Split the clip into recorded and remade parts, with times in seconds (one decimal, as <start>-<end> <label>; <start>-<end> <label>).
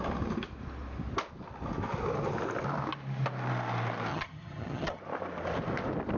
0.0-4.1 recorded; 4.1-5.0 remade; 5.0-6.2 recorded